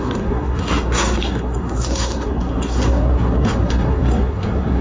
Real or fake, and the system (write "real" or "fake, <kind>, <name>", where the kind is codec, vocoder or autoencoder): fake, codec, SNAC